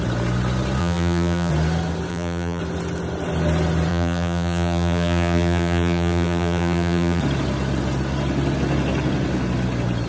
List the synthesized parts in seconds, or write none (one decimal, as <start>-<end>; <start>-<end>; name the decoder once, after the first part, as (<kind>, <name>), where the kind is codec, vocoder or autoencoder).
0.8-1.5 (vocoder, BigVGAN v2); 2.1-2.6; 3.9-7.2